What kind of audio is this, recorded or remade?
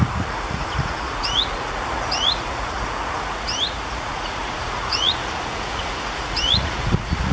remade